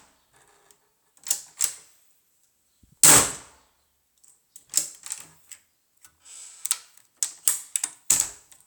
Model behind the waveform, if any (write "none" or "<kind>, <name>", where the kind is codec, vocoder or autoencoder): none